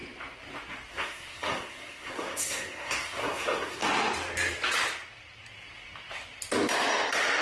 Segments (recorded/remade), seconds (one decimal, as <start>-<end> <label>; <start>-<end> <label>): 0.0-0.9 recorded; 0.9-3.8 remade; 3.8-7.4 recorded